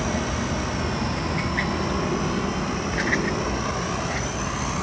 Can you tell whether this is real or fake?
real